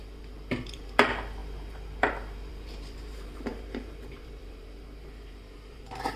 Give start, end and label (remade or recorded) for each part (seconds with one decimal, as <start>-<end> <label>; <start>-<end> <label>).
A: 0.0-6.2 remade

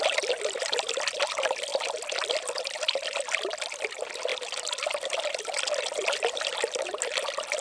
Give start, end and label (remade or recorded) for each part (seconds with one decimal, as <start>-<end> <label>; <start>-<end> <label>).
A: 0.0-7.6 recorded

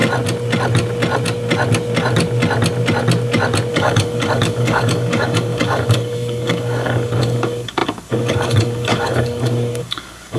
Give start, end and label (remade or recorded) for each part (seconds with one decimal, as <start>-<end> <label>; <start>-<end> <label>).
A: 0.0-3.7 recorded; 3.7-10.4 remade